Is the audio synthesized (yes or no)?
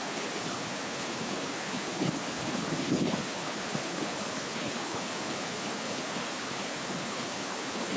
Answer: yes